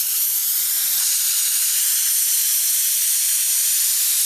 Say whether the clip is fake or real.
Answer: real